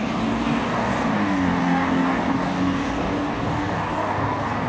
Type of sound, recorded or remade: remade